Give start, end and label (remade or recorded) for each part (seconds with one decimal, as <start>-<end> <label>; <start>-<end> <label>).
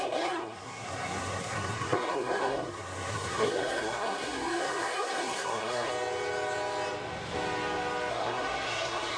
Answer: 0.0-5.9 remade; 5.9-8.1 recorded; 8.1-9.2 remade